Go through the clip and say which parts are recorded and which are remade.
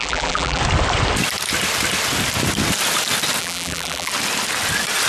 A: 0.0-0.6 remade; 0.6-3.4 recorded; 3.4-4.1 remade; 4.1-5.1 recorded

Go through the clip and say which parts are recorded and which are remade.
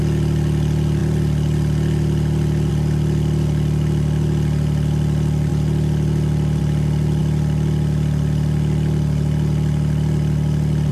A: 0.0-10.9 recorded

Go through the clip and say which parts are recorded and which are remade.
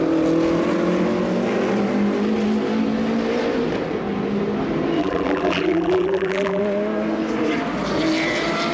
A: 0.0-5.0 recorded; 5.0-6.6 remade; 6.6-8.7 recorded